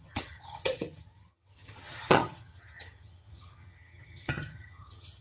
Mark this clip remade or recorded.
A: remade